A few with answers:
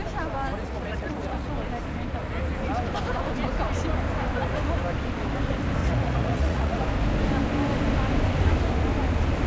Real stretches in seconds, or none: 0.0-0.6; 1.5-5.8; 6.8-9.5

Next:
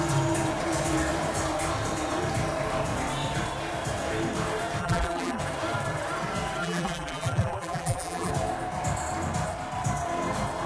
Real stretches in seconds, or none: 0.0-4.8; 5.4-6.6; 8.3-10.7

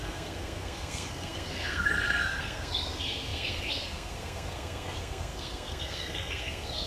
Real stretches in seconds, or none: none

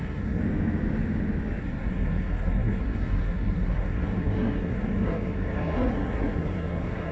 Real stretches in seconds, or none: 0.4-1.6

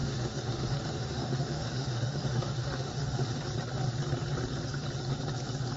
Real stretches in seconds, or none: 3.4-5.8

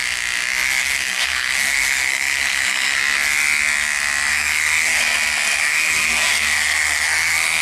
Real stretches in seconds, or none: 0.0-0.8; 3.0-4.3; 5.0-5.6

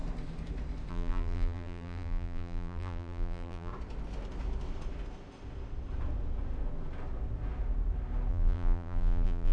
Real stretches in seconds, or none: 0.0-0.9; 3.7-8.3

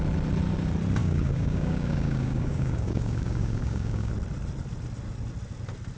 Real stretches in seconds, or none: 0.0-1.0; 4.1-6.0